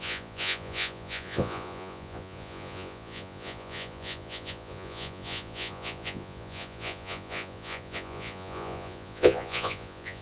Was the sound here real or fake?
fake